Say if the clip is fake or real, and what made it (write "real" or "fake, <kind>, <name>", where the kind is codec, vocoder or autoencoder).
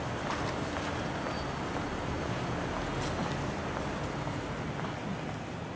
real